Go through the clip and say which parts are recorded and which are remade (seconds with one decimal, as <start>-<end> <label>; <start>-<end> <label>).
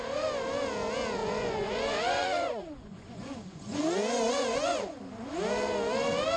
0.0-1.2 recorded; 1.2-5.0 remade; 5.0-6.4 recorded